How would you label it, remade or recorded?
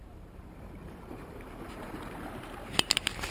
remade